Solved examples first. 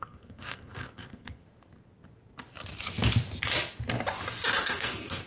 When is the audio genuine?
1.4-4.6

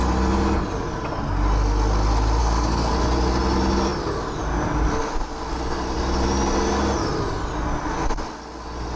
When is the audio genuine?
0.0-2.4; 2.9-9.0

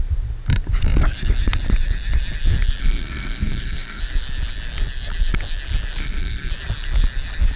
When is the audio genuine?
0.0-2.8; 4.0-6.0; 6.5-7.6

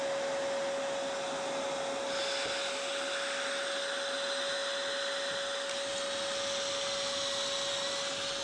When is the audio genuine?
0.0-8.4

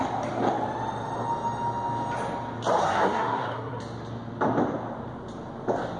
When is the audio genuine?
0.0-2.8; 3.8-6.0

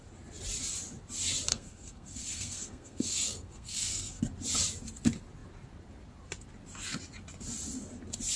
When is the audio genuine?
0.0-1.5; 4.2-8.4

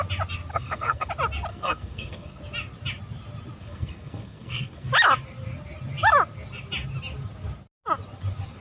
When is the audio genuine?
0.0-0.5; 1.1-1.5; 2.4-3.6; 4.9-8.6

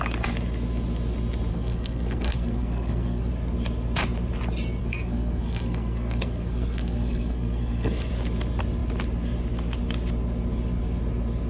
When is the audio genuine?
0.0-1.5; 3.3-4.8; 8.1-11.5